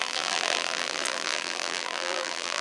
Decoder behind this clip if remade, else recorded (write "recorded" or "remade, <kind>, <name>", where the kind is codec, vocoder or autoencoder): remade, vocoder, BigVGAN v2